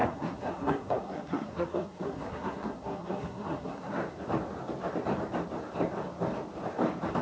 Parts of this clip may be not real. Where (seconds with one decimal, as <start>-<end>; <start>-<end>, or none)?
0.0-4.0